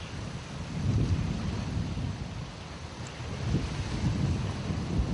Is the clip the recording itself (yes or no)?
yes